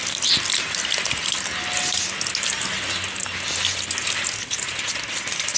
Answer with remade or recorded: recorded